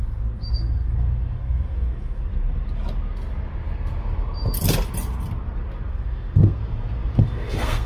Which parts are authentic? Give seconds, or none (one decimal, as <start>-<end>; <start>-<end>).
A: 2.3-5.9; 6.6-7.2